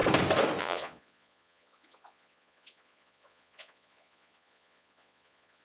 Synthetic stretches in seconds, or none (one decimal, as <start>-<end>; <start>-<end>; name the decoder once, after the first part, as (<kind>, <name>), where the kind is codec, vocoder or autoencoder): 0.6-5.6 (vocoder, Vocos)